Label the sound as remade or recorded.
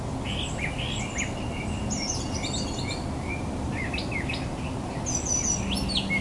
recorded